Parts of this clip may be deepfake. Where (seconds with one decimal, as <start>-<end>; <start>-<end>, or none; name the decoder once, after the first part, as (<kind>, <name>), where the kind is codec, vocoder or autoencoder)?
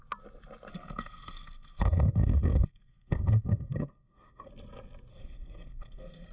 0.7-4.5 (codec, SNAC); 5.1-6.3